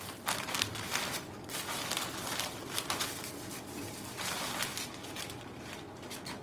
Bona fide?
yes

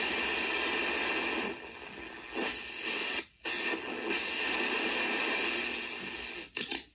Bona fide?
yes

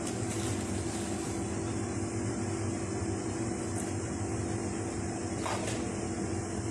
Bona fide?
yes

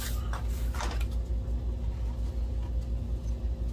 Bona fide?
yes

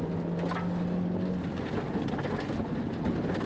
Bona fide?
yes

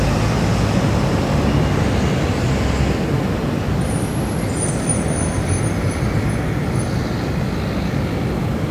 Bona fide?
yes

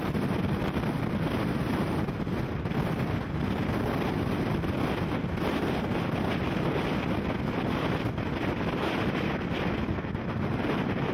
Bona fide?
yes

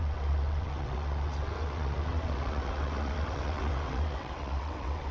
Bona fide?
no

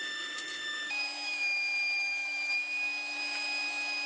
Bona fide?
no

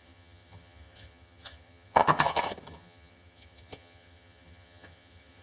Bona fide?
no